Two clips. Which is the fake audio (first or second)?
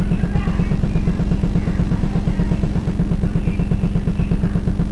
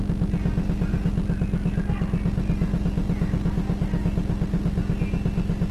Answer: first